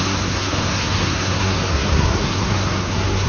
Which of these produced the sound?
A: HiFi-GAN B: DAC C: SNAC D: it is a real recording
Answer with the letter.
C